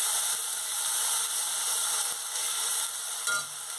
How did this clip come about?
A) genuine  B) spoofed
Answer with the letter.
A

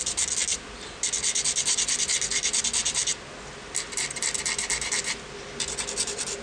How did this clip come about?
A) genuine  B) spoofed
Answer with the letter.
A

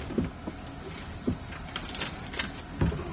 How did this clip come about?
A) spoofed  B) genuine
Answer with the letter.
B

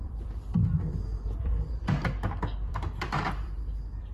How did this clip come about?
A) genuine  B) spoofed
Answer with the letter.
B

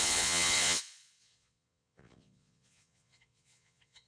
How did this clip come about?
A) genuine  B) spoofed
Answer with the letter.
B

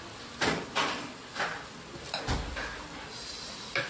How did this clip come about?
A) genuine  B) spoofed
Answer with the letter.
A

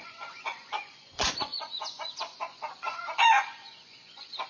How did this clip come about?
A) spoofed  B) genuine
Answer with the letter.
A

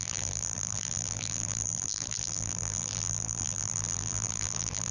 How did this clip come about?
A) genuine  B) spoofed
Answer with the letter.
B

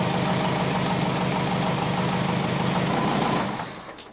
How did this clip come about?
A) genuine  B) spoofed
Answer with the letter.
A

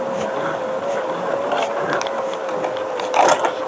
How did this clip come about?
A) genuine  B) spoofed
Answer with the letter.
A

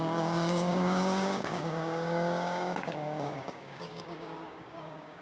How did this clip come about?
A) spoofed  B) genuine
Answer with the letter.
A